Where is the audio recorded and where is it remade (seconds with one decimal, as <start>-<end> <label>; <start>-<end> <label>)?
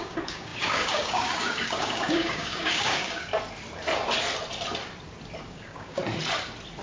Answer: 0.0-3.3 remade; 3.3-5.5 recorded; 5.5-6.0 remade; 6.0-6.8 recorded